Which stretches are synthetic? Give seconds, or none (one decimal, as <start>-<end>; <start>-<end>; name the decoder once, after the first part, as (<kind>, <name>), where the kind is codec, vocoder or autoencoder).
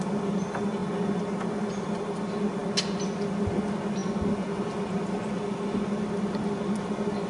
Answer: none